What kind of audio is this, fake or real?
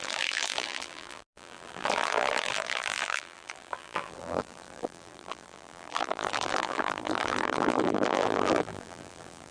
fake